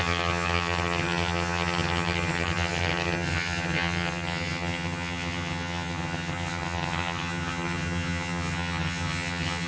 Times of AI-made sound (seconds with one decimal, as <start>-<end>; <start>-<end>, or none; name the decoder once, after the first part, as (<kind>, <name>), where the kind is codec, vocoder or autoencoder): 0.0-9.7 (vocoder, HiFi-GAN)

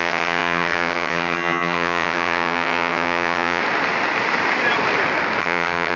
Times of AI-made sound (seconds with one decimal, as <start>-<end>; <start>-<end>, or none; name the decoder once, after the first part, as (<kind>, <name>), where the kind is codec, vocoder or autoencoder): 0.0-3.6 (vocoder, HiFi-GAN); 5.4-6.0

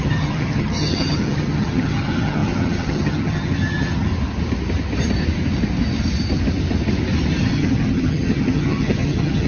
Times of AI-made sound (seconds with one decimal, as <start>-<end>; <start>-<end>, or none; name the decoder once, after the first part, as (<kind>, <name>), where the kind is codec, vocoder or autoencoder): 0.0-4.1 (vocoder, HiFi-GAN); 7.4-9.5

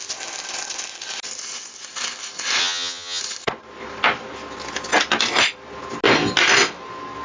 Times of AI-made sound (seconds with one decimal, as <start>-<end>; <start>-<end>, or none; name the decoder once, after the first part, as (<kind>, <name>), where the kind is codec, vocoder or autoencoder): 2.6-3.2 (vocoder, HiFi-GAN)

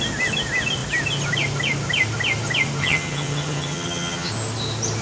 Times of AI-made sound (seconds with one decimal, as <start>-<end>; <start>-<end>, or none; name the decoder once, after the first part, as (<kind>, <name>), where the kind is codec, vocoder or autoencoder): 2.8-4.3 (vocoder, HiFi-GAN)

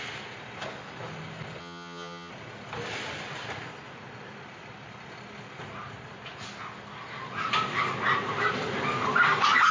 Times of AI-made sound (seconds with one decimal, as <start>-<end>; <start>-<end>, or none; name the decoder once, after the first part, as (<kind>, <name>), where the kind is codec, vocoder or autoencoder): 1.6-2.3 (vocoder, HiFi-GAN)

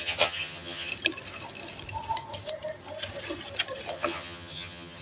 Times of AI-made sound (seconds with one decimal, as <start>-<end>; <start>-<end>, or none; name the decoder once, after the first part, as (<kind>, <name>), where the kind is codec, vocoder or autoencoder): 0.0-0.9 (vocoder, HiFi-GAN); 3.9-5.0